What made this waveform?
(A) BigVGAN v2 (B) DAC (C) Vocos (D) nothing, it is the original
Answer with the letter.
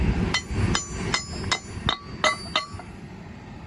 D